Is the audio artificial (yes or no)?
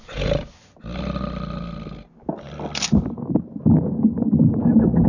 no